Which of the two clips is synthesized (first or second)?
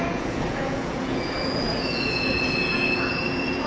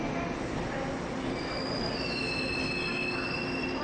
first